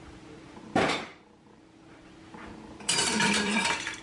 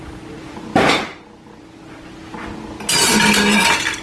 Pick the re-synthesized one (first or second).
first